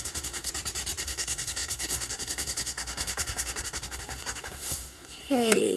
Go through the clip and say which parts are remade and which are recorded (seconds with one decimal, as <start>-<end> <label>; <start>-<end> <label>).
0.0-0.5 remade; 0.5-1.0 recorded; 1.0-5.8 remade

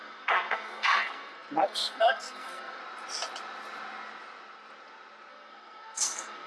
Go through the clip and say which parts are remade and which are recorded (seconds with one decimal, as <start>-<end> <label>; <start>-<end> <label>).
0.0-2.8 remade; 2.8-5.3 recorded; 5.3-6.5 remade

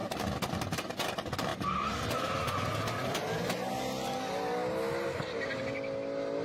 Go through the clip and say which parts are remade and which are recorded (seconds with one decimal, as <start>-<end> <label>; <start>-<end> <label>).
0.0-0.6 remade; 0.6-1.5 recorded; 1.5-3.7 remade; 3.7-6.4 recorded

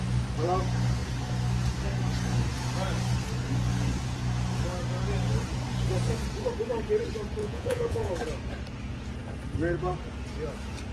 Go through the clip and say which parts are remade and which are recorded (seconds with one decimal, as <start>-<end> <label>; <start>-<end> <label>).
0.0-7.4 recorded; 7.4-8.1 remade; 8.1-10.9 recorded